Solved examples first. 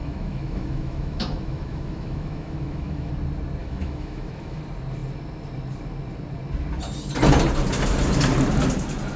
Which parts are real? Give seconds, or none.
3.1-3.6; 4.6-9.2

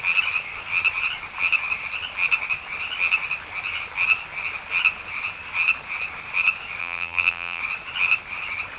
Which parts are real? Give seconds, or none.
0.0-6.8; 7.6-8.8

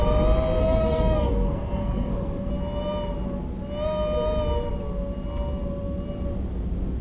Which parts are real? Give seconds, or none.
0.0-0.6; 2.5-7.0

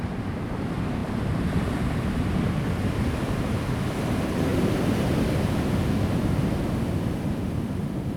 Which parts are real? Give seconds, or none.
0.0-1.0; 3.9-8.2

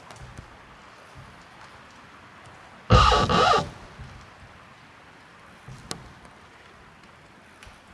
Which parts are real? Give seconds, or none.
0.0-7.9

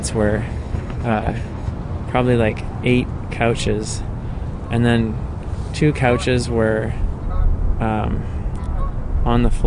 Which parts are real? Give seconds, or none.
0.0-0.5; 1.7-9.7

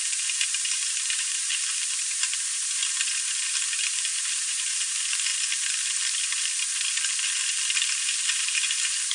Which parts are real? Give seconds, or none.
2.8-3.7; 5.3-7.9